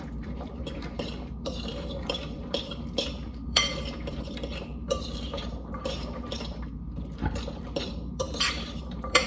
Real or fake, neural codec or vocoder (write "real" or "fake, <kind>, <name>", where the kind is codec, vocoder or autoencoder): fake, vocoder, BigVGAN v2